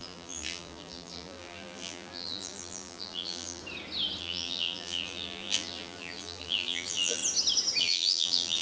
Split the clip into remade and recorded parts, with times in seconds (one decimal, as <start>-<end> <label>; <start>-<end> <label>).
0.0-3.6 remade; 3.6-4.2 recorded; 4.2-7.2 remade; 7.2-7.8 recorded; 7.8-8.6 remade